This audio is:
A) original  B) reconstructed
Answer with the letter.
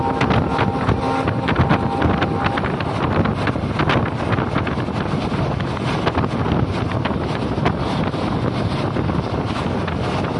A